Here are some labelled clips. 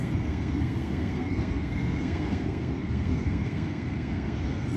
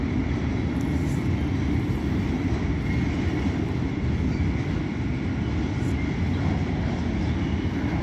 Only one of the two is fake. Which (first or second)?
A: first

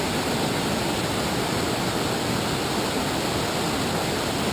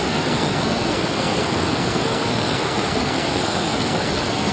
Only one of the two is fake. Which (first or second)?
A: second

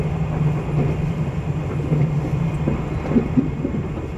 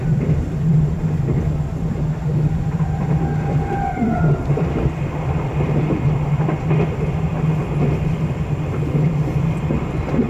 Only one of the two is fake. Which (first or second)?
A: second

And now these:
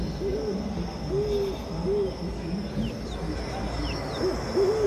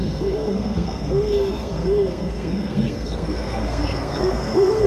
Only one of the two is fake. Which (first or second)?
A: second